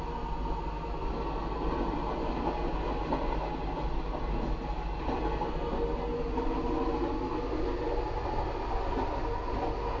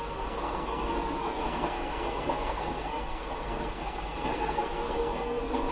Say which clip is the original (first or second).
first